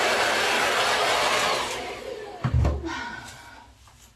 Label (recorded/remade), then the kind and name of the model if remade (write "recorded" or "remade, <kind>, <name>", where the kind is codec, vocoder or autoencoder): recorded